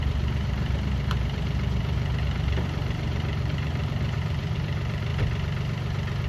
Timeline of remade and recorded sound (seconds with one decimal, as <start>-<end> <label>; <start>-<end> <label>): 0.0-5.1 remade; 5.1-6.3 recorded